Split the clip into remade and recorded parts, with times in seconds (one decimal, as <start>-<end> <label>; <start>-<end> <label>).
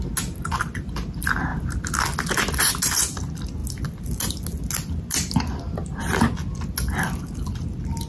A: 0.0-8.1 recorded